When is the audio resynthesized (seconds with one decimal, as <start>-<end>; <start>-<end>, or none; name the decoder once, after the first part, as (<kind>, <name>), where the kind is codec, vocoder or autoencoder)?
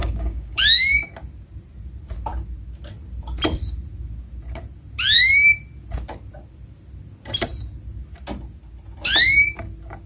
0.0-0.6 (codec, DAC)